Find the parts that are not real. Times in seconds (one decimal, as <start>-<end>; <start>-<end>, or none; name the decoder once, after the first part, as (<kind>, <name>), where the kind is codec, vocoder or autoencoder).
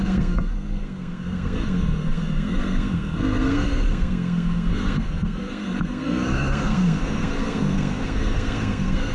0.0-9.1 (codec, SNAC)